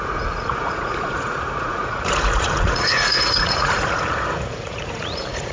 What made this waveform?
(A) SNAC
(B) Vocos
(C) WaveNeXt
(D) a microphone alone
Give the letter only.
B